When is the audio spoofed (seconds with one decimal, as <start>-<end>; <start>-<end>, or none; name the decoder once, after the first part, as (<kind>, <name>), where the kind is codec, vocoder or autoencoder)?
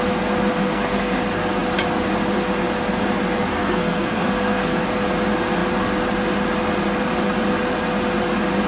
0.5-1.2 (codec, SNAC); 3.4-4.8